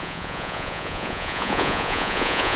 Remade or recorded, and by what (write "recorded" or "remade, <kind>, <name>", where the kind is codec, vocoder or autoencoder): remade, vocoder, Vocos